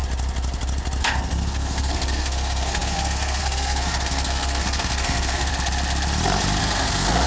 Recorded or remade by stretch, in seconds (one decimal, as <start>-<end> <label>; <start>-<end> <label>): 0.0-1.0 recorded; 1.0-5.5 remade; 5.5-6.6 recorded; 6.6-7.3 remade